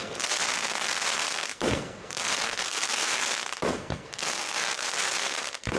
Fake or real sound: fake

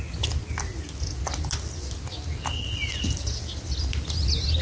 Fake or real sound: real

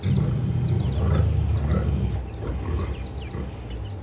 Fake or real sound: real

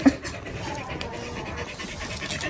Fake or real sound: real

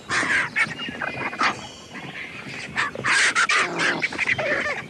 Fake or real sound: real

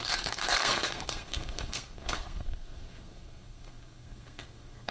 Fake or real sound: fake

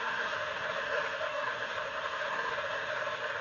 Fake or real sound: fake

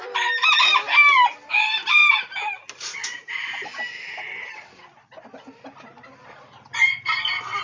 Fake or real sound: real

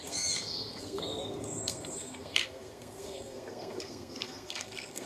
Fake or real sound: fake